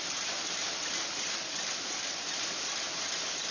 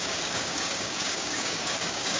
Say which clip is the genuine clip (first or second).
first